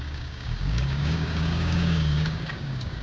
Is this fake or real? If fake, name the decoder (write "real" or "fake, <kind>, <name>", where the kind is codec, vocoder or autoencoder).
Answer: fake, codec, DAC